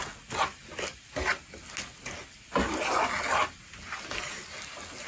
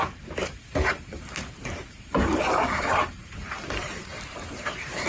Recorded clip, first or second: first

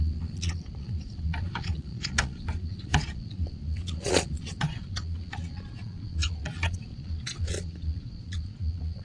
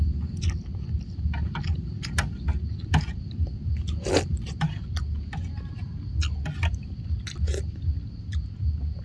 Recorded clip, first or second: second